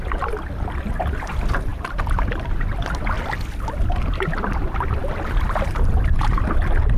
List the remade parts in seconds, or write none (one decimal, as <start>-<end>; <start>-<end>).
none

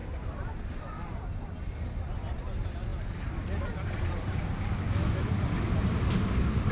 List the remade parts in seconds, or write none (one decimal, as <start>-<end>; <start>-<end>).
none

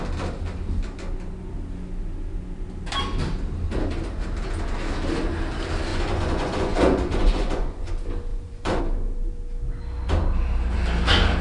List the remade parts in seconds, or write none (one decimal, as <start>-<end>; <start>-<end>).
5.9-7.9; 8.3-8.8

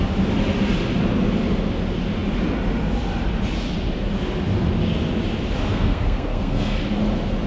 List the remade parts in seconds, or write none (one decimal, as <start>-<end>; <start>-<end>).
5.7-6.8

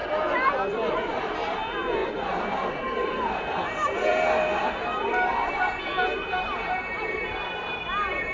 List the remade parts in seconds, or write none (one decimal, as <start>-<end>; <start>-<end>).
2.0-3.4; 4.1-5.3

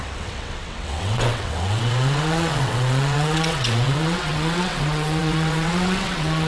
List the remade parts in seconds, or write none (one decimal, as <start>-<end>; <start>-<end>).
0.0-6.5

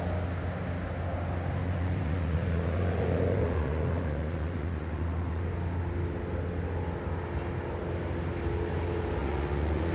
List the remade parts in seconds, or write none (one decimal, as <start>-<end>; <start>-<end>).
1.6-5.4; 9.2-9.9

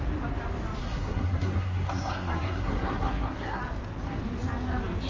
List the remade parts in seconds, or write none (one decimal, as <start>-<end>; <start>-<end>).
0.8-3.6